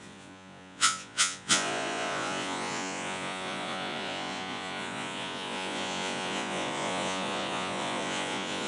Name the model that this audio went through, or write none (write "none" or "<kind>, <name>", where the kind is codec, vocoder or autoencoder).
vocoder, Vocos